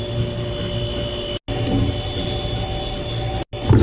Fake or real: real